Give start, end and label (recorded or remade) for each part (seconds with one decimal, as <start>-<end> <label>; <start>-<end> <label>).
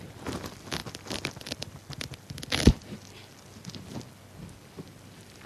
0.0-5.5 remade